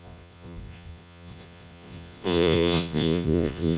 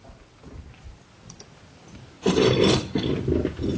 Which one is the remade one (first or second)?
first